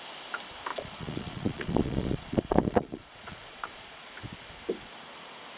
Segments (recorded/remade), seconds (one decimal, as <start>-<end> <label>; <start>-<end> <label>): 0.0-0.7 recorded; 0.7-4.1 remade; 4.1-5.6 recorded